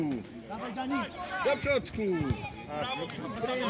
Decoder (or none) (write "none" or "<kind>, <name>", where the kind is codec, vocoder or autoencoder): none